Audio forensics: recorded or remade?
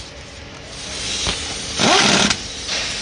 recorded